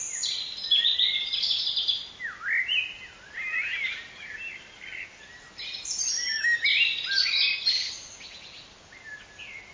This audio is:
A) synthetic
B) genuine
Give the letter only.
B